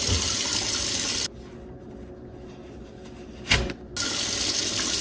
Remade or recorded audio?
recorded